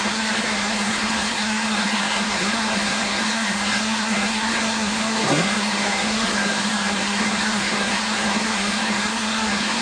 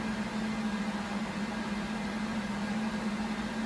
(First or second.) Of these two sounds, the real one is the second